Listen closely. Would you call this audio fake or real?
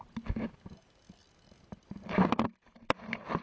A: real